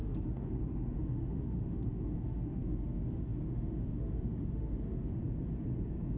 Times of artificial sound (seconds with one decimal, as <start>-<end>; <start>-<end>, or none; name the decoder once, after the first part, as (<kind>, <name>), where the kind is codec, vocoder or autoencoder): 0.0-5.2 (autoencoder, DAC-VAE)